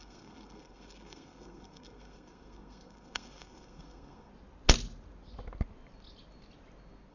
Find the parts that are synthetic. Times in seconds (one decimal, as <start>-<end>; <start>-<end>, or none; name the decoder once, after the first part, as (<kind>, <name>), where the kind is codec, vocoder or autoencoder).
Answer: 0.0-4.3 (codec, SNAC)